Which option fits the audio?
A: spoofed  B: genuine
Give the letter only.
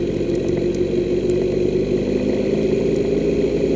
B